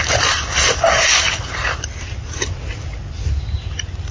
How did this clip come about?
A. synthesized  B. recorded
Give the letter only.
B